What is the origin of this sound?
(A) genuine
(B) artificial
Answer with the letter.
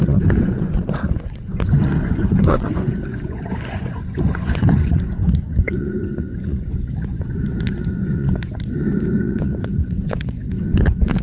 B